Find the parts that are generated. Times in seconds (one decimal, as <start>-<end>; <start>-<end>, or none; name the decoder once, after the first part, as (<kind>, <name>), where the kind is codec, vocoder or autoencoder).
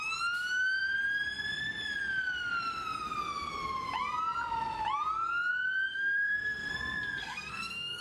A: 5.9-6.7 (codec, SNAC); 7.2-8.0